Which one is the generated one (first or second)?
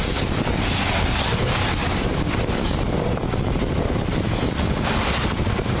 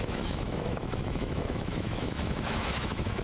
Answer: second